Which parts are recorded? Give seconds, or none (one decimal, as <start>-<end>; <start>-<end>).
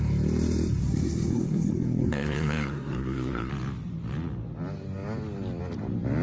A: 0.0-0.8; 3.5-6.2